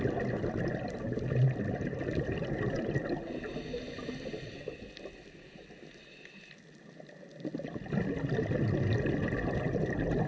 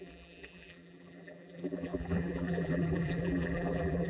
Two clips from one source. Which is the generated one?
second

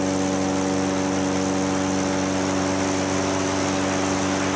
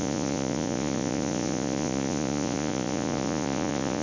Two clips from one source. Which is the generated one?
second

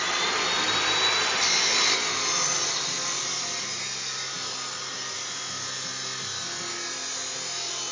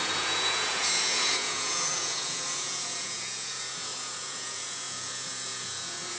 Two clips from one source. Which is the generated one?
second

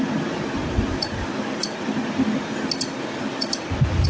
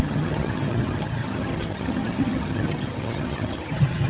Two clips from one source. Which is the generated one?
second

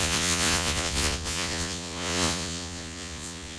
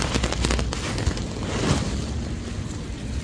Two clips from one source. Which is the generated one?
first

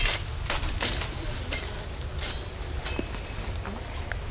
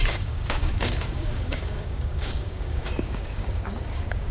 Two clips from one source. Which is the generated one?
second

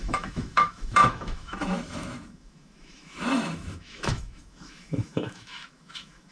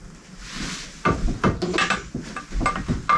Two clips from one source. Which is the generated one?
first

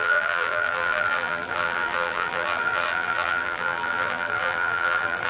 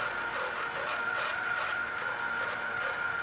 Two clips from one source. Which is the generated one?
first